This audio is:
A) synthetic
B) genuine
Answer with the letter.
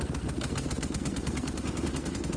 A